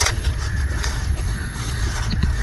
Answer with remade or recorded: remade